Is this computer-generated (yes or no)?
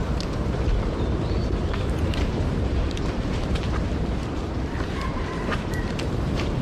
yes